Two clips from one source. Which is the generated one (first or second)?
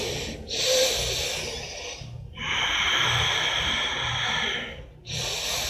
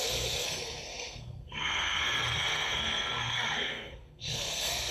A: second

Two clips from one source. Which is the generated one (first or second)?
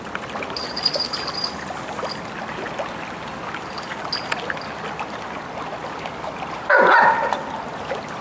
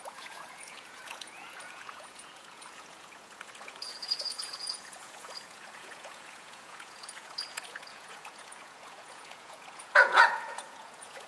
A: second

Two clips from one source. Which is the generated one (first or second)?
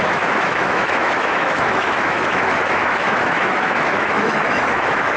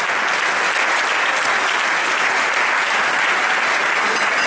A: first